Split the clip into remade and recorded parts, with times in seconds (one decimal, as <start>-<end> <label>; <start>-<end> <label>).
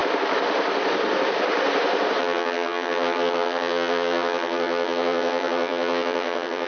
0.0-2.2 recorded; 2.2-6.7 remade